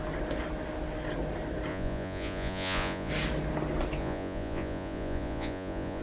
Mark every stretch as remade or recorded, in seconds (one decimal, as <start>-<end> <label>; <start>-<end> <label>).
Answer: 0.0-1.7 recorded; 1.7-3.1 remade; 3.1-4.0 recorded; 4.0-6.0 remade